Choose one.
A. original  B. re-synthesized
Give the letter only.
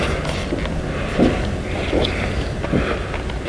A